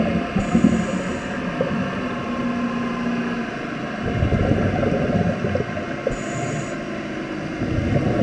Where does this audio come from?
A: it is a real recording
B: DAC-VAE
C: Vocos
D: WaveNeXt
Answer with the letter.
A